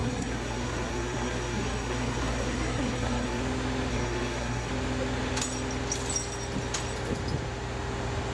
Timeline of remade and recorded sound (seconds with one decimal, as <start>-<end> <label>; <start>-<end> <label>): 0.0-3.4 remade; 3.4-3.9 recorded; 3.9-4.7 remade; 4.7-8.3 recorded